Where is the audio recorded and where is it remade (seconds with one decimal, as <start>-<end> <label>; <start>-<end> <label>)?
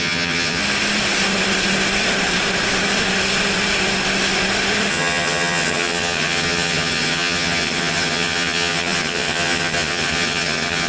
0.0-0.6 remade; 0.6-4.9 recorded; 4.9-10.9 remade